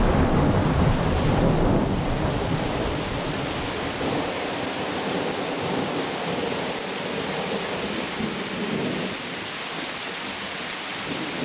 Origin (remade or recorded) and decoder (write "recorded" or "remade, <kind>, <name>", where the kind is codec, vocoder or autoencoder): recorded